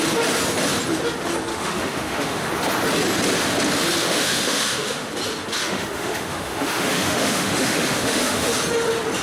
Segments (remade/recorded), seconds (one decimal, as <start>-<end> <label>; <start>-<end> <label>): 0.0-1.5 recorded; 1.5-2.5 remade; 2.5-4.0 recorded; 4.0-5.1 remade; 5.1-5.6 recorded; 5.6-8.6 remade; 8.6-9.2 recorded